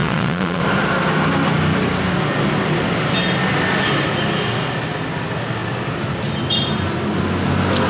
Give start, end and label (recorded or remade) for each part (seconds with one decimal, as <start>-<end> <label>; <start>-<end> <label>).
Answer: 0.0-0.6 remade; 0.6-7.9 recorded